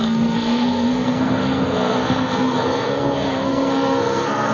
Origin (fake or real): fake